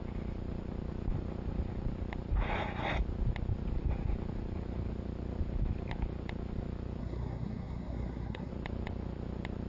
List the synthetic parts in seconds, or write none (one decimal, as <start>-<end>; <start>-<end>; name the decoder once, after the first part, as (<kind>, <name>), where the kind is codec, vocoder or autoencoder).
7.0-8.5 (codec, SNAC)